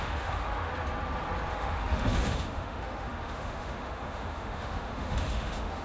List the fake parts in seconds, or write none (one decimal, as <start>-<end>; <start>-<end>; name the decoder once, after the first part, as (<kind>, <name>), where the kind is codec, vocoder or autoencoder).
0.0-0.7 (autoencoder, DAC-VAE); 1.5-5.8